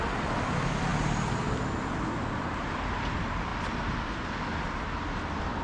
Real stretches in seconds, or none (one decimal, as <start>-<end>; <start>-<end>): 0.0-5.6